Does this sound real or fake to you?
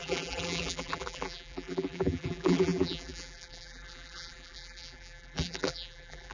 fake